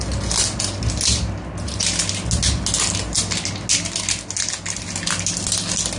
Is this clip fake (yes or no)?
no